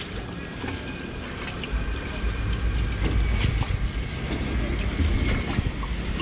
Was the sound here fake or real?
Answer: real